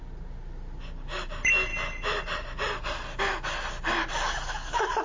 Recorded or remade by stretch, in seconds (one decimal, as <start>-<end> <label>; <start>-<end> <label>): 0.0-4.1 recorded; 4.1-5.0 remade